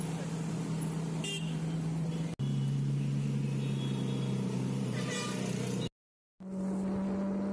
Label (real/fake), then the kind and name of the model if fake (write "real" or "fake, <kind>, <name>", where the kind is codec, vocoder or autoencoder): real